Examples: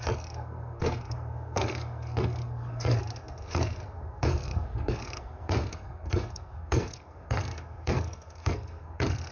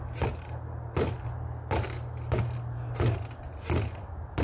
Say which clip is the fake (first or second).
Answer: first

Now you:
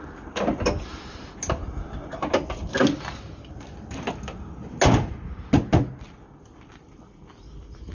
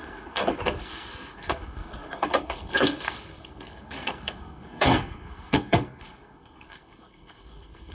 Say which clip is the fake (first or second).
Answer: second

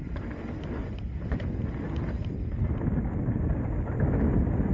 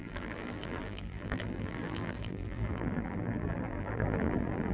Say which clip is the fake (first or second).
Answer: second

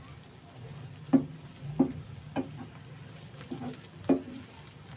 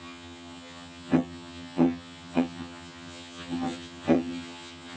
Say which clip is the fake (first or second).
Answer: second